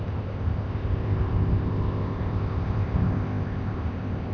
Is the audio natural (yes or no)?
no